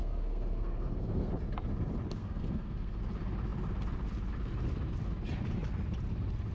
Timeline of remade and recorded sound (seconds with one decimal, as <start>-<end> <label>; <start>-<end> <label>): 0.0-1.3 remade; 1.3-2.2 recorded; 2.2-3.0 remade; 3.0-6.5 recorded

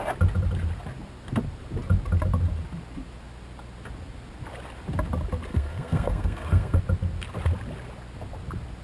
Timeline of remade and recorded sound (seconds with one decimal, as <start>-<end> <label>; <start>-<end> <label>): 0.0-5.5 recorded; 5.5-6.8 remade; 6.8-8.8 recorded

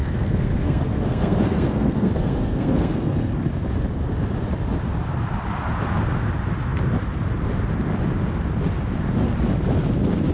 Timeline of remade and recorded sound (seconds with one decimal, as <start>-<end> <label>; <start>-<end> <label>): 0.0-3.4 remade; 3.4-10.3 recorded

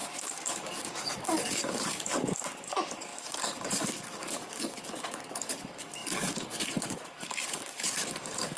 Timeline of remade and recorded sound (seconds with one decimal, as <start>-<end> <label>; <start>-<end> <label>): 0.0-8.6 remade